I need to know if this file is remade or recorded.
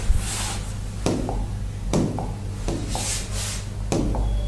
recorded